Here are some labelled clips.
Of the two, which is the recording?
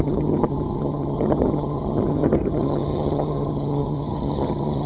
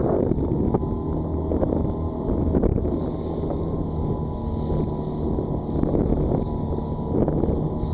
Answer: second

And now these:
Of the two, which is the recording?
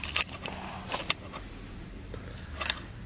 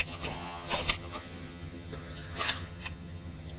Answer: first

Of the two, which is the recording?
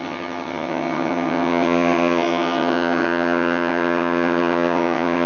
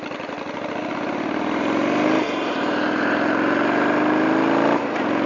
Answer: second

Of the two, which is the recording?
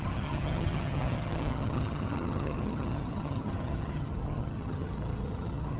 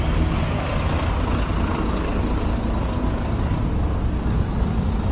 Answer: second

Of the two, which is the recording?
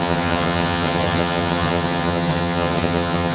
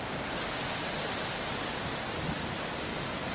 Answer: second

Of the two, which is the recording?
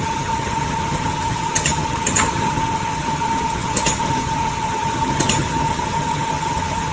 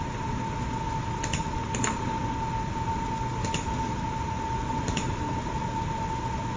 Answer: second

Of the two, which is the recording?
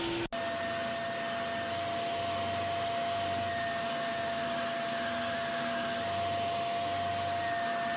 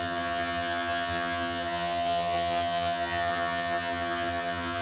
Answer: first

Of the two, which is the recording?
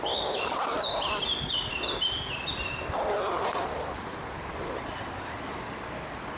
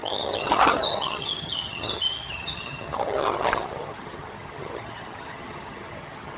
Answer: first